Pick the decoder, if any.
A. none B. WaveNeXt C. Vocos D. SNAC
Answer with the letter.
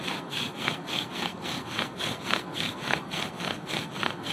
D